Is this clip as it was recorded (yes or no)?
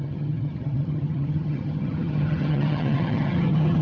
no